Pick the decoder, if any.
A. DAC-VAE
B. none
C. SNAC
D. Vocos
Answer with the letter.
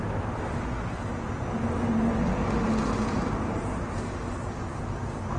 B